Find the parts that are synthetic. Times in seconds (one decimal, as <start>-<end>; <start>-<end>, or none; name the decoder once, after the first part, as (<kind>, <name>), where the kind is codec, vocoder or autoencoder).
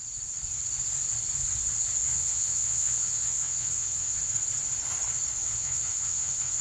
2.1-4.2 (vocoder, WaveNeXt); 5.4-6.6